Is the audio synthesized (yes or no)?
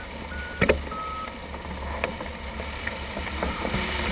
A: no